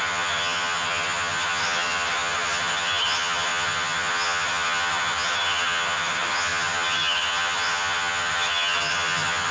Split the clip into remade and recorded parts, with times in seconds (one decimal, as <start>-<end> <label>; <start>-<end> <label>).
0.0-9.5 remade